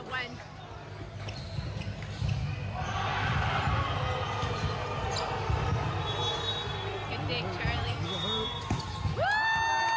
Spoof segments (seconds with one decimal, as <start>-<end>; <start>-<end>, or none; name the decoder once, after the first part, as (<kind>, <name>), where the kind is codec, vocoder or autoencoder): 3.1-3.8 (vocoder, BigVGAN v2); 4.4-5.1